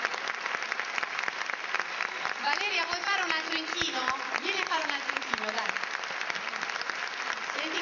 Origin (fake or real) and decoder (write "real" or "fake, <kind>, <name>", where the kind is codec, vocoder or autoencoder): real